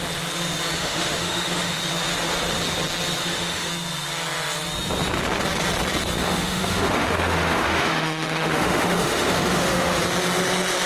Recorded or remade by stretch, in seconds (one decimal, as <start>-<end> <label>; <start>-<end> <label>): 0.0-0.8 recorded; 0.8-1.8 remade; 1.8-3.2 recorded; 3.2-3.7 remade; 3.7-6.2 recorded; 6.2-10.0 remade; 10.0-10.9 recorded